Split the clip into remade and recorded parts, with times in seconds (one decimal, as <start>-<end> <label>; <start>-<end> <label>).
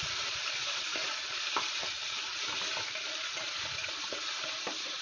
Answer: 0.0-5.0 remade